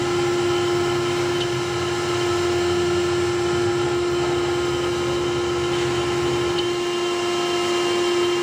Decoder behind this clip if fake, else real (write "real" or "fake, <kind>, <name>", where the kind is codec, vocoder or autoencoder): real